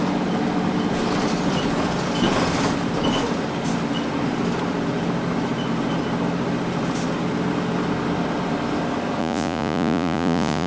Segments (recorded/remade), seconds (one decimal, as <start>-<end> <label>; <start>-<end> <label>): 0.0-9.2 recorded; 9.2-10.7 remade